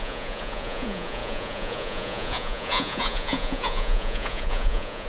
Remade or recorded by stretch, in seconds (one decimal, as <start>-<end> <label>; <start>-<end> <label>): 0.0-5.1 remade

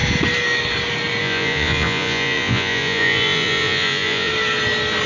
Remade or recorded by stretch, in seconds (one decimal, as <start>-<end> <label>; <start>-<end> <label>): 0.0-1.2 recorded; 1.2-4.3 remade; 4.3-5.1 recorded

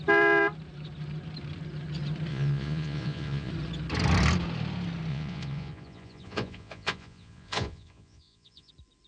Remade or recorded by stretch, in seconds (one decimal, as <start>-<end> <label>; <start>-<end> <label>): 0.0-2.3 recorded; 2.3-3.5 remade; 3.5-5.1 recorded; 5.1-8.7 remade; 8.7-9.1 recorded

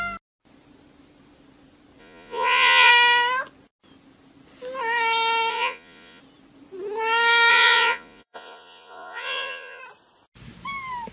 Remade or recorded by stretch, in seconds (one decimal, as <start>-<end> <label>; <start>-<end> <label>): 0.0-2.0 recorded; 2.0-2.9 remade; 2.9-5.5 recorded; 5.5-6.2 remade; 6.2-7.5 recorded; 7.5-9.8 remade; 9.8-11.1 recorded

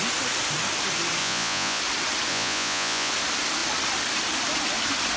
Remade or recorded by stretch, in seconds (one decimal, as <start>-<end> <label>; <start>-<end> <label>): 0.0-1.2 recorded; 1.2-1.8 remade; 1.8-2.3 recorded; 2.3-3.1 remade; 3.1-5.2 recorded

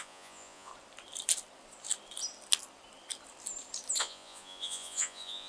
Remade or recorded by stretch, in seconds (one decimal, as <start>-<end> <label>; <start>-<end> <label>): 0.0-0.7 remade; 0.7-4.0 recorded; 4.0-5.5 remade

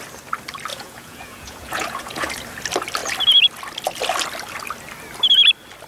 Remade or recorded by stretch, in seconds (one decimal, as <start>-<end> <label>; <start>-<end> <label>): 0.0-0.7 recorded; 0.7-2.3 remade; 2.3-5.9 recorded